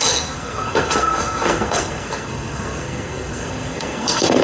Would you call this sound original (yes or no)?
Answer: no